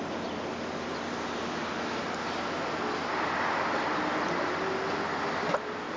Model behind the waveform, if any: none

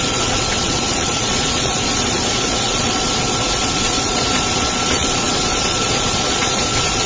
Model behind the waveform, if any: vocoder, Vocos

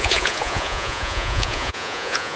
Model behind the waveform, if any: vocoder, Vocos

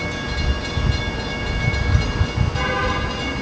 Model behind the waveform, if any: none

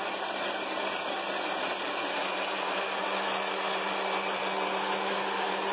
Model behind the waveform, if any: none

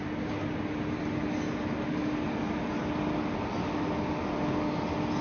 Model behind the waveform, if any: none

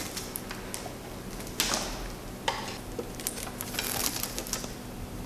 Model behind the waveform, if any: none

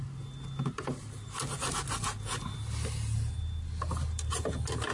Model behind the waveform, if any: none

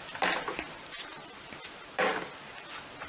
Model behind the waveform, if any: none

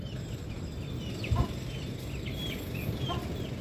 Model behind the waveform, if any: vocoder, BigVGAN v2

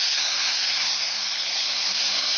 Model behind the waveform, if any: codec, SNAC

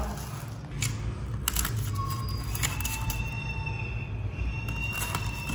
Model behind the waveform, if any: none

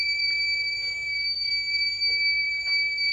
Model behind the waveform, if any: vocoder, BigVGAN v2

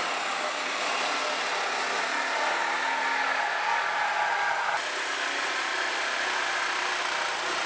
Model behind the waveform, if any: none